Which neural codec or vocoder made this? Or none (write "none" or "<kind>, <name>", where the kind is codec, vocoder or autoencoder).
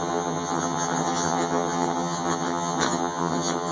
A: vocoder, HiFi-GAN